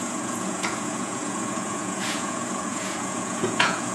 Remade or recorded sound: remade